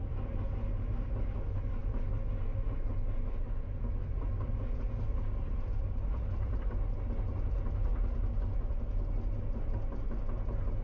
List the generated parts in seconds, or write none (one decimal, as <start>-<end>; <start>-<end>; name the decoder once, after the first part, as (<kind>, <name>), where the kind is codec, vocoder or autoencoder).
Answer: none

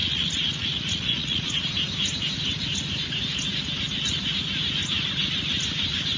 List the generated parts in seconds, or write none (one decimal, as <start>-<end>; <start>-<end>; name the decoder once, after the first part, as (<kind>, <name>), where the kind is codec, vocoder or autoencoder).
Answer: 0.0-1.5 (vocoder, Vocos)

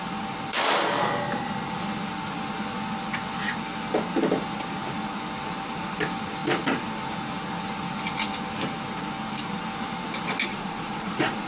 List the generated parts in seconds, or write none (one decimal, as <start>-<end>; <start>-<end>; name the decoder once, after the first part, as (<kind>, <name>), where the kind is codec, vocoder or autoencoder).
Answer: 10.5-11.5 (vocoder, Vocos)

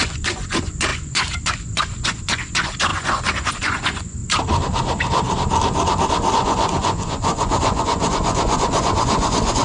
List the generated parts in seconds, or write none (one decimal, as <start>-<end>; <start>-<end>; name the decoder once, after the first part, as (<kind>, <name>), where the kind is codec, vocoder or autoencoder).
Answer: 0.0-4.2 (vocoder, Vocos); 6.3-9.6

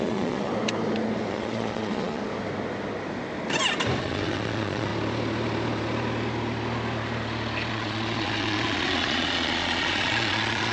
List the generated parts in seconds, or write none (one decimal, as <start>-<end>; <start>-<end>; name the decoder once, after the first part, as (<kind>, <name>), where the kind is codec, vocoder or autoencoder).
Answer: 0.0-0.5 (vocoder, Vocos); 1.3-2.2; 4.0-4.9; 7.7-10.7